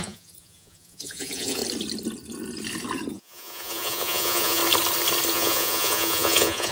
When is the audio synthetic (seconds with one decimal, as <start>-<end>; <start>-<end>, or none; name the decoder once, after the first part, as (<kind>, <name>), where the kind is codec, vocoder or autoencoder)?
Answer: 0.0-1.6 (vocoder, Vocos); 3.1-4.6; 5.3-6.7